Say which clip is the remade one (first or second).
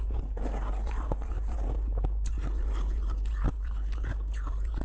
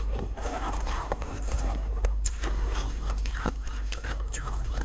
second